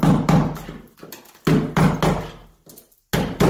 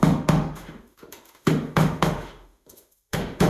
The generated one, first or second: second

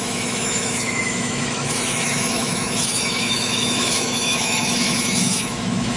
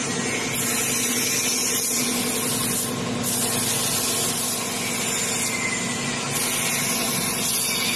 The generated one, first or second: first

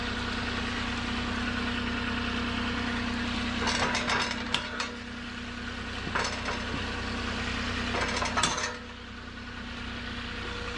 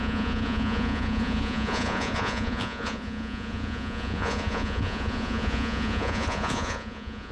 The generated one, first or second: second